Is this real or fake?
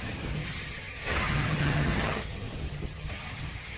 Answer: fake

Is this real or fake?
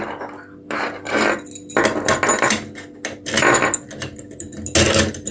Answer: real